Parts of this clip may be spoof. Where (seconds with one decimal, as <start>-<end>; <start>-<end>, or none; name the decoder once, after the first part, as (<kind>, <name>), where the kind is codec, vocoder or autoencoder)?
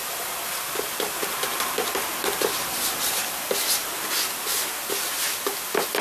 none